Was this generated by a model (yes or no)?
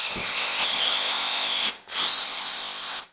yes